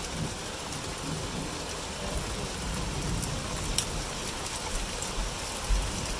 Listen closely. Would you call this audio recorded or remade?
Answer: recorded